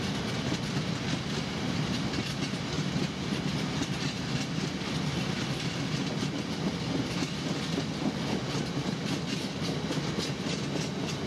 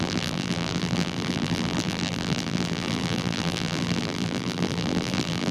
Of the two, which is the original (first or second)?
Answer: first